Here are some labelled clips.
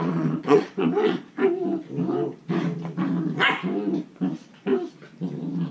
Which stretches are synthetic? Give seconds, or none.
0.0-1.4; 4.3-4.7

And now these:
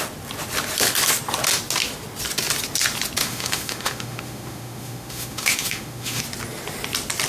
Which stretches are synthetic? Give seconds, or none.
3.2-6.2

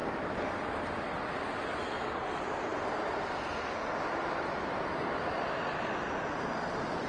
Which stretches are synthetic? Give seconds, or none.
0.0-0.9